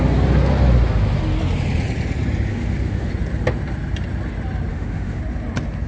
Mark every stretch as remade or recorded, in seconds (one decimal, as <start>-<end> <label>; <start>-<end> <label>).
0.0-2.5 recorded; 2.5-3.1 remade; 3.1-4.7 recorded; 4.7-5.2 remade; 5.2-5.9 recorded